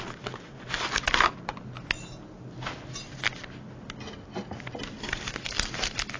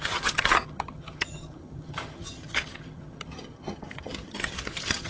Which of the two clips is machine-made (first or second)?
second